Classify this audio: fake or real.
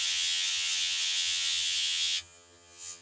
fake